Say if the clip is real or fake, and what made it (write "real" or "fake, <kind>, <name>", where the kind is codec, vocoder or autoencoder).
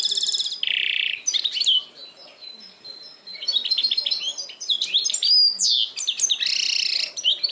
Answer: real